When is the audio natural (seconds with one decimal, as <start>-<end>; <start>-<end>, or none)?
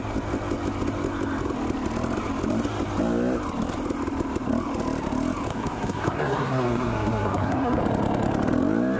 0.0-5.5; 7.8-9.0